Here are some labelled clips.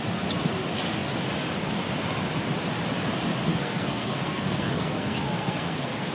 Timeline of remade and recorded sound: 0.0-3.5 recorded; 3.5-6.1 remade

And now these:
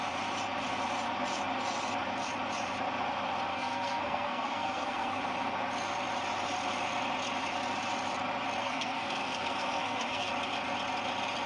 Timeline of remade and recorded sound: 0.0-3.5 recorded; 3.5-5.2 remade; 5.2-8.6 recorded; 8.6-10.3 remade; 10.3-11.5 recorded

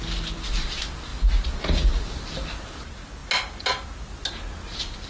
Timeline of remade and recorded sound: 0.0-5.1 recorded

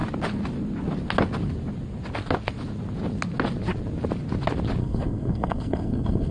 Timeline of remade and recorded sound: 0.0-4.8 recorded; 4.8-6.3 remade

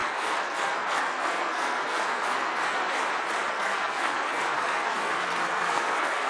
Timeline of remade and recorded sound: 0.0-3.0 remade; 3.0-3.5 recorded; 3.5-6.3 remade

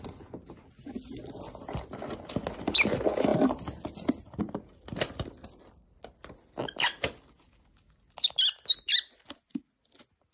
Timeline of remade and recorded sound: 0.0-10.3 recorded

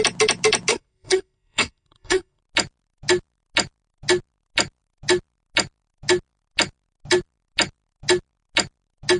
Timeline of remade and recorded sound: 0.0-0.7 recorded; 0.7-2.4 remade; 2.4-9.2 recorded